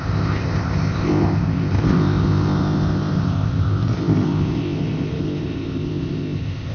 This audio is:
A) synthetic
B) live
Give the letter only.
A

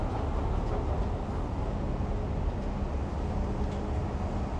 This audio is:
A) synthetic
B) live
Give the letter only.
B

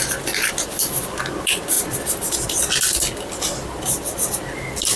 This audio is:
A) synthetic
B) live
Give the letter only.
B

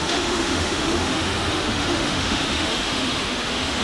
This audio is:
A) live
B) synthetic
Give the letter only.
B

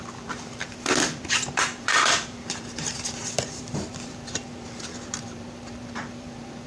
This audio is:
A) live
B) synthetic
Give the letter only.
B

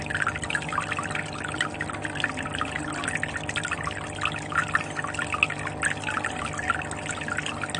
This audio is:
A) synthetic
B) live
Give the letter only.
B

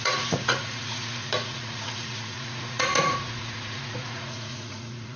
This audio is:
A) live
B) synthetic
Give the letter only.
B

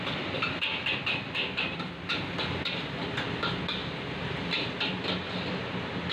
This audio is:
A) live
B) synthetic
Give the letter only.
A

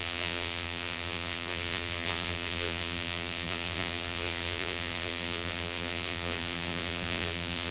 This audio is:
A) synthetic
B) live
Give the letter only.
A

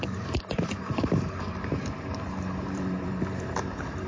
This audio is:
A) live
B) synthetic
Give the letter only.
B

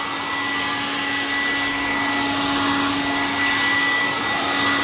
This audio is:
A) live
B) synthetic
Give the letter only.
A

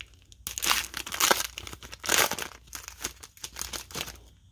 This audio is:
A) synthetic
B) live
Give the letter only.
B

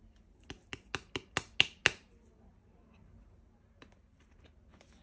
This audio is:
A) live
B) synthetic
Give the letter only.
A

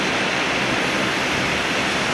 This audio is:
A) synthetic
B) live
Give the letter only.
B